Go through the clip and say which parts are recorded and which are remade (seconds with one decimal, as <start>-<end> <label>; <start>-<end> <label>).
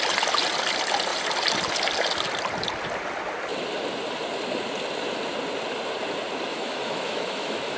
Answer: 0.0-6.5 recorded; 6.5-7.8 remade